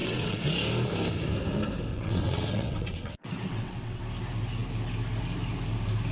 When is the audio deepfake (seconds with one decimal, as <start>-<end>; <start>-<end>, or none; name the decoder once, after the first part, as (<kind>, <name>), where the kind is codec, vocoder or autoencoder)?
0.0-0.5 (vocoder, WaveNeXt); 1.9-4.0